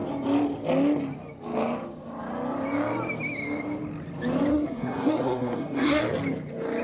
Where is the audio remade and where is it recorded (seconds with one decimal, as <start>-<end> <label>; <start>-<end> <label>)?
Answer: 0.0-4.5 recorded; 4.5-6.0 remade; 6.0-6.8 recorded